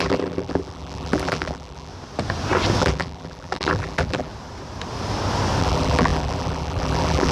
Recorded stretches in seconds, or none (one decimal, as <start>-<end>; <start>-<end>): 1.9-2.8; 4.3-5.6